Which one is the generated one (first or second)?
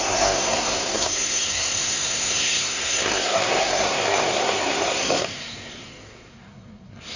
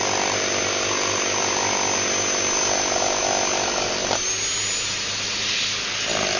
first